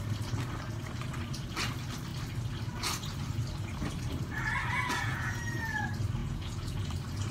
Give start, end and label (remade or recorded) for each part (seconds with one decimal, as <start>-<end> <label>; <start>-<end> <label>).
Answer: 0.0-4.7 recorded; 4.7-5.8 remade; 5.8-6.2 recorded; 6.2-6.8 remade; 6.8-7.3 recorded